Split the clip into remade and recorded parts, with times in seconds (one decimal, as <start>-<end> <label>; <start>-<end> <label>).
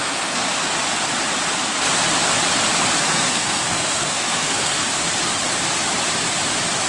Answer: 0.0-0.4 remade; 0.4-3.0 recorded; 3.0-4.8 remade; 4.8-6.9 recorded